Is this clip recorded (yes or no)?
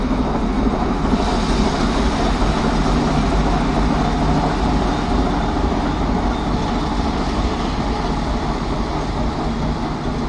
yes